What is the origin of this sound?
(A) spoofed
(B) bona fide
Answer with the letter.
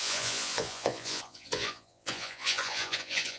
A